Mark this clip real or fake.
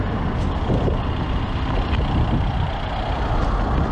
real